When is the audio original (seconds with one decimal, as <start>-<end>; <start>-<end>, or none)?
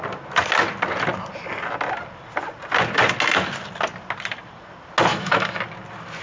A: 0.0-5.1; 5.6-6.2